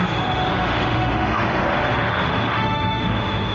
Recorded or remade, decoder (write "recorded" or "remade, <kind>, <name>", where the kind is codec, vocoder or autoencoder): remade, autoencoder, DAC-VAE